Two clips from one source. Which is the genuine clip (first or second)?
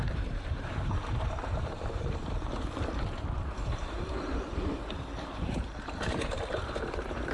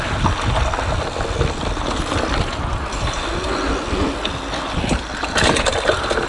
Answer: second